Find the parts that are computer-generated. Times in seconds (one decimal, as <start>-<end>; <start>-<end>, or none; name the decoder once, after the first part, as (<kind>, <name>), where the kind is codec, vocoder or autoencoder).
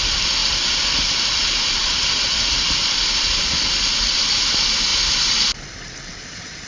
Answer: none